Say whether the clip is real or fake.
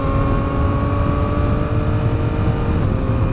real